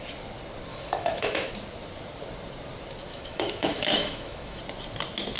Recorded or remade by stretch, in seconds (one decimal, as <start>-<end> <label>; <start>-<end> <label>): 0.0-0.7 recorded; 0.7-1.5 remade; 1.5-3.1 recorded; 3.1-4.6 remade; 4.6-5.4 recorded